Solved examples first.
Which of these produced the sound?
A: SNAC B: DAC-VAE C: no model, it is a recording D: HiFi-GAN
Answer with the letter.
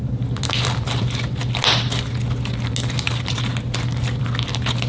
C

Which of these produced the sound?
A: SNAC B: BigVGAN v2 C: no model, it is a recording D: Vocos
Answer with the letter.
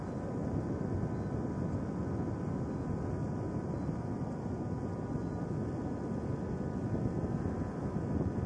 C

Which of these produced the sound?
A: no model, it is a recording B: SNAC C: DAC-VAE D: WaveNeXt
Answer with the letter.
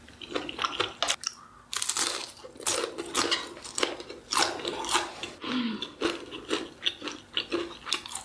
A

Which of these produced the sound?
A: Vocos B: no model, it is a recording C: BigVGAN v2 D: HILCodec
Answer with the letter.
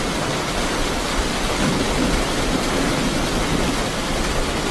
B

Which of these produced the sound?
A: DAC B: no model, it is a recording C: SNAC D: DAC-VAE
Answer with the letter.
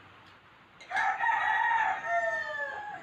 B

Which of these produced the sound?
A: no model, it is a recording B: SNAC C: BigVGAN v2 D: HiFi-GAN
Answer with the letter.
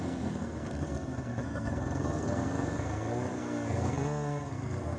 B